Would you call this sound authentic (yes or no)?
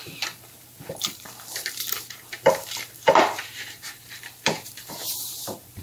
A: no